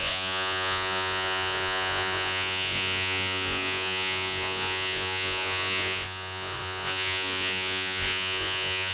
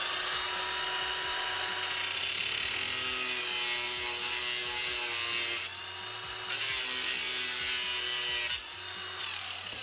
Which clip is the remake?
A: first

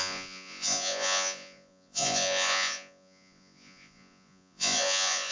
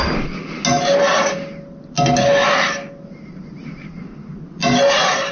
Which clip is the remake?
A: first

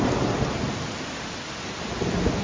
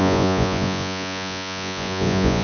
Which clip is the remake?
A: second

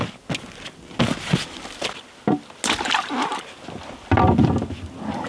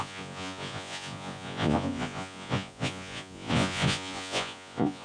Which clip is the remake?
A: second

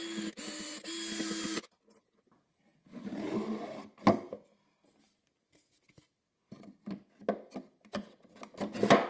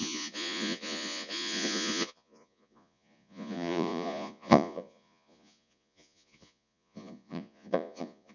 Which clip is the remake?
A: second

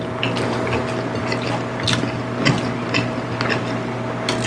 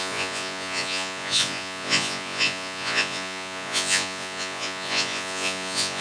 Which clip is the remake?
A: second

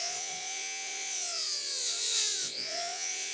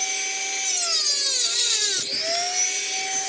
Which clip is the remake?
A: first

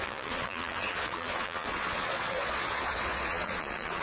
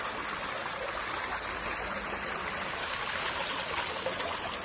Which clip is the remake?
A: first